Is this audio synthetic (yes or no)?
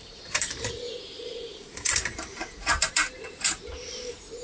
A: yes